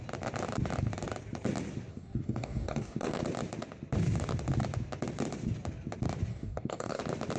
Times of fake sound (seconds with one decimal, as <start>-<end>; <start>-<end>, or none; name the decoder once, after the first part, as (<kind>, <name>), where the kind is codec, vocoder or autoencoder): 1.9-3.2 (codec, DAC); 6.3-7.0